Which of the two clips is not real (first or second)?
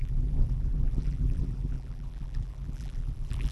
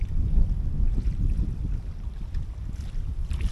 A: first